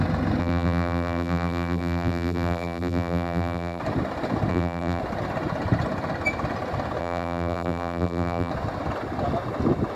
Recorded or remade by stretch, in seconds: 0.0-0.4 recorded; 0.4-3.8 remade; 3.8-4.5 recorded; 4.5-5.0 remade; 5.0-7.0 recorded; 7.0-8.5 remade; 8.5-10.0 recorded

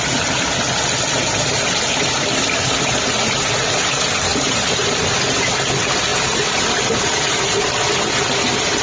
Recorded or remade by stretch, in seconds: 0.0-4.3 recorded; 4.3-4.9 remade; 4.9-6.1 recorded; 6.1-7.3 remade; 7.3-8.8 recorded